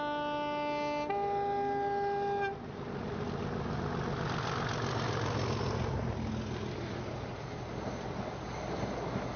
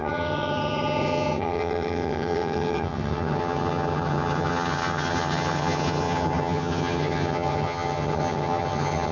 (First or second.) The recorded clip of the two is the first